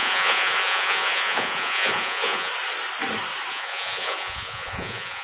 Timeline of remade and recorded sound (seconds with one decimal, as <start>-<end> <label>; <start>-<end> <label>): 0.0-2.5 remade; 2.5-3.5 recorded; 3.5-5.2 remade